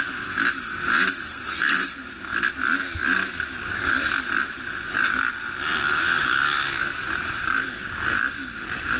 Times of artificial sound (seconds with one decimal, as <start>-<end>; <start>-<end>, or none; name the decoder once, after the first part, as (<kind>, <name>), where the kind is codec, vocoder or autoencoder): 1.3-2.1 (codec, SNAC)